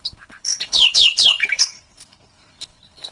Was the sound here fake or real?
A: fake